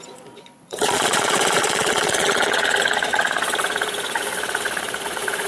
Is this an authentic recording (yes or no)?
no